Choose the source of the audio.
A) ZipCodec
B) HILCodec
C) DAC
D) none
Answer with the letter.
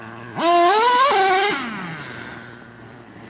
D